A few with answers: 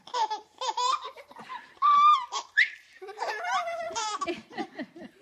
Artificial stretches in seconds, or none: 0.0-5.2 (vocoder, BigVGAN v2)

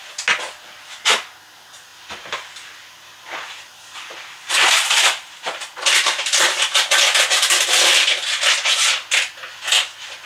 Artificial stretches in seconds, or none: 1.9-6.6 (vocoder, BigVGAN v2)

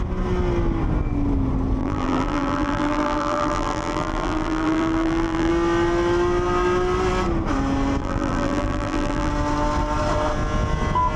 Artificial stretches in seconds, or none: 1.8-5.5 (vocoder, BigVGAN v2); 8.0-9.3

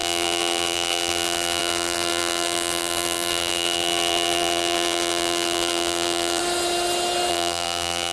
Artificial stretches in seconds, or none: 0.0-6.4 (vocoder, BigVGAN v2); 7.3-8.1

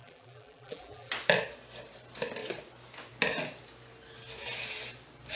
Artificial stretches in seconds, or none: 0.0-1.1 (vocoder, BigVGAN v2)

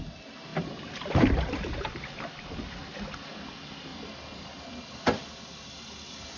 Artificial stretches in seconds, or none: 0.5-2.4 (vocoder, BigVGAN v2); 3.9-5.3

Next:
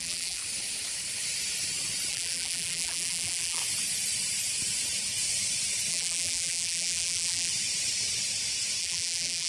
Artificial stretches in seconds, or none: 0.0-0.4 (vocoder, BigVGAN v2); 2.1-3.6; 5.9-7.5; 8.8-9.5

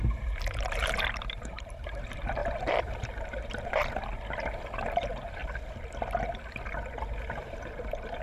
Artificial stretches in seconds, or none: 0.0-5.4 (vocoder, BigVGAN v2); 7.0-8.2